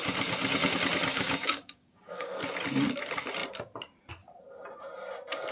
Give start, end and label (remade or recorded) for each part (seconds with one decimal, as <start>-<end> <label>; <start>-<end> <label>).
0.0-1.1 recorded; 1.1-2.4 remade; 2.4-5.5 recorded